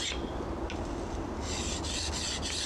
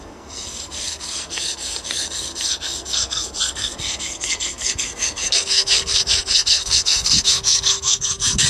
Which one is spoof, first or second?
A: second